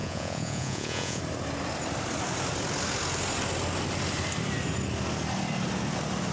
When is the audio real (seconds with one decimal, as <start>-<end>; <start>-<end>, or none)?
1.2-6.3